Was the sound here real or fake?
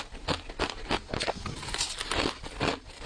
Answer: real